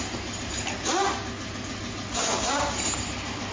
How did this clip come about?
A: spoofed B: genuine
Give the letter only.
B